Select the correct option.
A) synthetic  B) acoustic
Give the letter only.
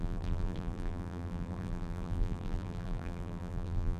A